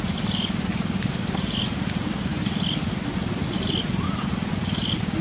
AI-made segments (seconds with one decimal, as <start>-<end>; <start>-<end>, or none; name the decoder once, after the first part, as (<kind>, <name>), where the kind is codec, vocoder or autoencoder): 0.0-0.7 (vocoder, BigVGAN v2); 1.5-2.3